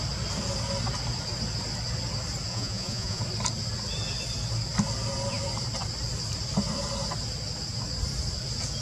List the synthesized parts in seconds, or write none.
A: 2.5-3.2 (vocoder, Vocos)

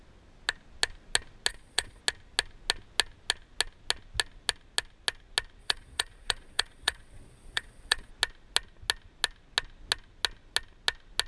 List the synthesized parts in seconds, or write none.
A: 1.5-2.0 (vocoder, Vocos); 5.6-8.1

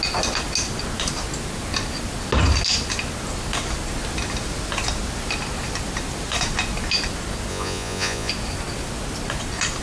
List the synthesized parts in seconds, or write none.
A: 7.5-8.3 (vocoder, Vocos)

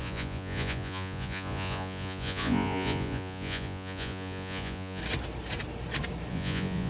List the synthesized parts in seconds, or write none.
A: 0.0-5.0 (vocoder, Vocos); 6.3-6.9

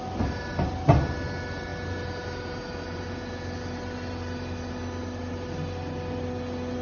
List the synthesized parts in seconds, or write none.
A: none

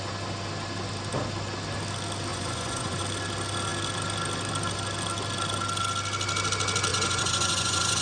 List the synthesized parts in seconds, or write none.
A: 2.3-3.0 (vocoder, Vocos); 6.9-8.0